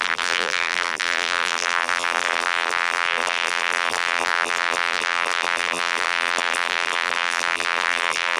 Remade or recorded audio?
remade